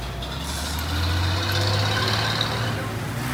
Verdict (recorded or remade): recorded